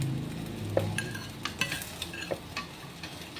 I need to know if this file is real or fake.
real